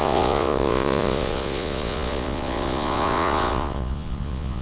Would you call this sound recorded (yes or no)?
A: no